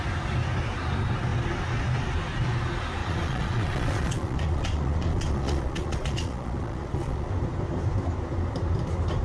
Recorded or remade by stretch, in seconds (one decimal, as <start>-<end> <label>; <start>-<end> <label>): 0.0-3.0 recorded; 3.0-7.3 remade; 7.3-9.2 recorded